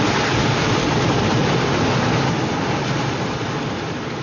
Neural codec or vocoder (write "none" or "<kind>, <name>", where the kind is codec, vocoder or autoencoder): none